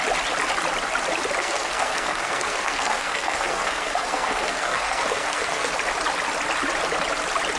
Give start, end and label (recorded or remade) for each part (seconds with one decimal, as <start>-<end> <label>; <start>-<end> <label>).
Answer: 0.0-1.4 recorded; 1.4-5.7 remade; 5.7-7.6 recorded